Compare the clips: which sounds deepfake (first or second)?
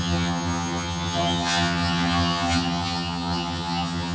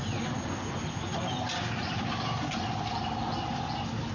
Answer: first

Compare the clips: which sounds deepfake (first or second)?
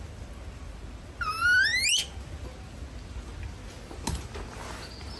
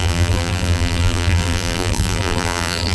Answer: second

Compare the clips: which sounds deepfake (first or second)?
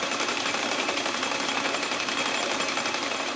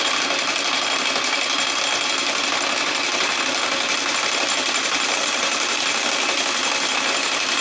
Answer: first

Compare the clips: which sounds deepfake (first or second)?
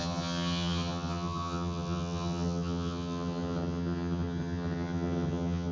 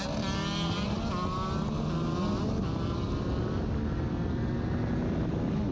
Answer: first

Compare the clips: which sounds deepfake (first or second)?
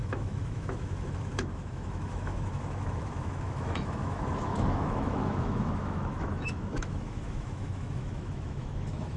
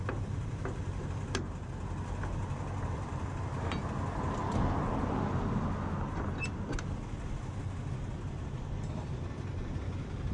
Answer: first